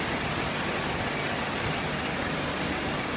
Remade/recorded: recorded